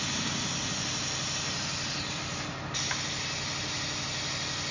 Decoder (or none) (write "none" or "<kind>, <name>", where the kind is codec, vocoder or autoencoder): none